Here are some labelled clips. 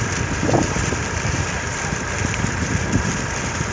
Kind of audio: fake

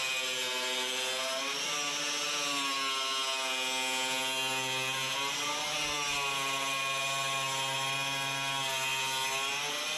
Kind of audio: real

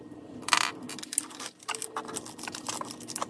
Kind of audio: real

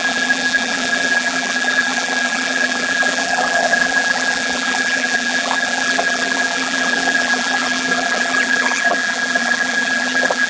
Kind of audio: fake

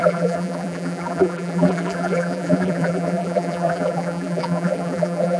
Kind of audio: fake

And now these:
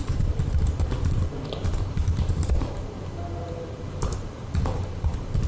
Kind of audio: fake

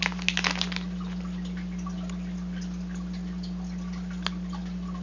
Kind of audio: real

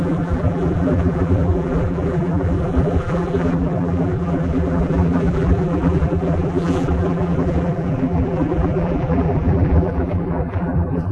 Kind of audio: fake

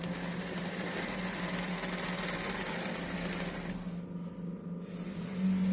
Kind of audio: real